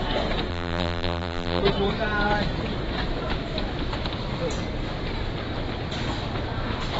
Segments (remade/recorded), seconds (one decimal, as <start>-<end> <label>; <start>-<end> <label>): 0.0-0.5 recorded; 0.5-1.6 remade; 1.6-7.0 recorded